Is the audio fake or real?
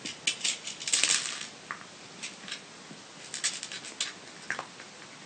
real